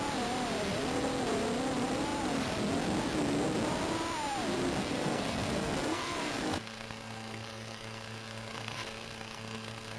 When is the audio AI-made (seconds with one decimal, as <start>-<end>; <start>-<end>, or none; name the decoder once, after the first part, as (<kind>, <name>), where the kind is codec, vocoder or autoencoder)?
4.8-10.0 (codec, SNAC)